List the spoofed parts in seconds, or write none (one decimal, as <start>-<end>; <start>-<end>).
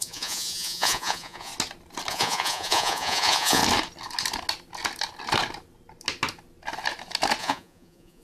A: 0.0-1.5; 2.1-3.6; 7.4-8.2